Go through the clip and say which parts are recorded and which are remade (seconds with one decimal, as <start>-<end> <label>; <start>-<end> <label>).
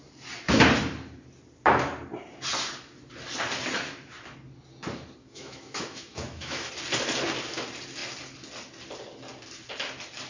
0.0-5.2 recorded; 5.2-6.7 remade; 6.7-10.3 recorded